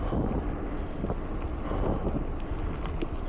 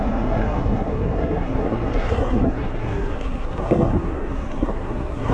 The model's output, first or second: second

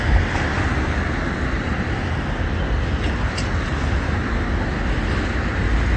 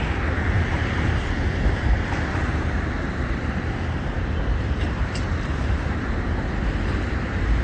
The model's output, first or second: second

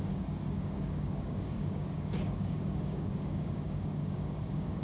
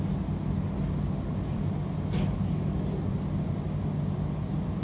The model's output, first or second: first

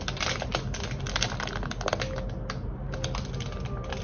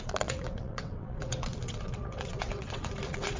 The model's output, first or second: second